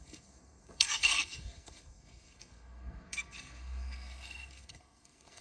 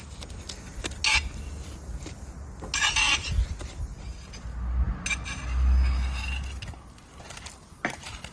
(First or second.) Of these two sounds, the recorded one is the second